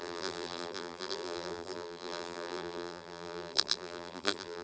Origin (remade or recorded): remade